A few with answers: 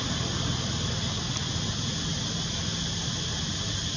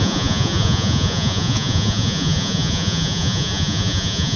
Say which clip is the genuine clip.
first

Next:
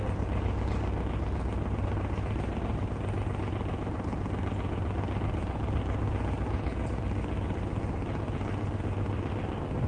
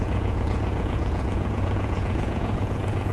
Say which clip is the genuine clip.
first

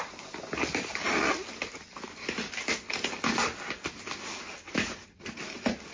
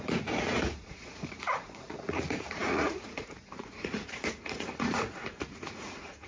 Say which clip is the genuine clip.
first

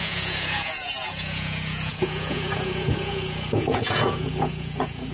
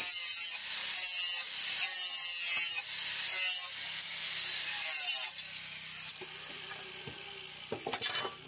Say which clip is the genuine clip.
second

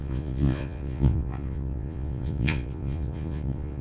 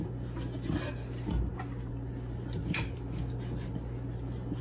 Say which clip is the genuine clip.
second